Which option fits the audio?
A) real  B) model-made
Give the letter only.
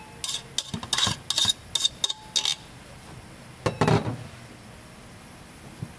A